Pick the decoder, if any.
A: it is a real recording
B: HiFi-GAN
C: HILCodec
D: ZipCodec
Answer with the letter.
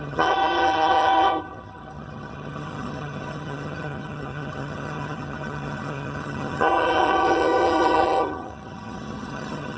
B